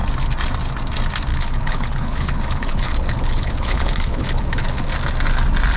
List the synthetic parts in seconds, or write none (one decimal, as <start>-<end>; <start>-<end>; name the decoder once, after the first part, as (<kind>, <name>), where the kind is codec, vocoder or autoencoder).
1.3-4.8 (codec, HILCodec)